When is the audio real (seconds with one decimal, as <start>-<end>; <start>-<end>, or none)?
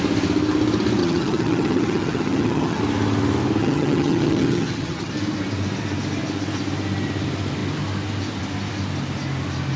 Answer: 0.0-1.0; 2.8-3.6; 5.1-9.8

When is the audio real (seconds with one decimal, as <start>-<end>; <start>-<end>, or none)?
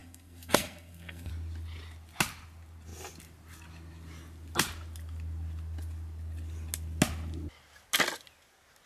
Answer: 1.3-8.9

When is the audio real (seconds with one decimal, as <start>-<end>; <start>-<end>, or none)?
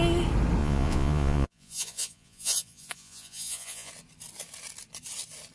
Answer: 0.0-0.6; 3.9-5.5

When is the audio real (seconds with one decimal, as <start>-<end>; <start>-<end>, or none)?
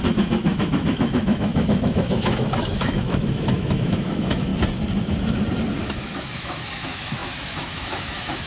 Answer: 4.5-5.8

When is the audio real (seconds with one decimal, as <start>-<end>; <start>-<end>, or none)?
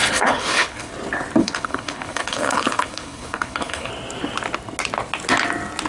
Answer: 0.9-1.4; 3.9-5.9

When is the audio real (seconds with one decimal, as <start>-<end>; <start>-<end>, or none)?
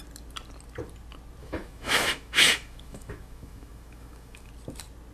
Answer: 0.0-1.4; 4.5-5.1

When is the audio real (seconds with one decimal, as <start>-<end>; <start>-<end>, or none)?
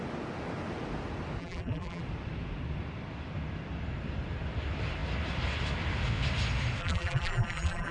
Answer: 0.0-1.4; 2.0-6.8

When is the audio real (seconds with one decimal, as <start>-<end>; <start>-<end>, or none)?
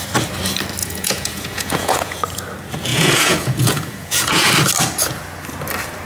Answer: 0.0-0.8; 2.2-2.9; 4.5-6.1